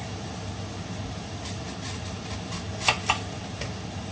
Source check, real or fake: real